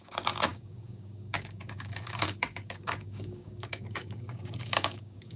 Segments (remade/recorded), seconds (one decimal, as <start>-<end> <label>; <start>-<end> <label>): 0.0-5.4 remade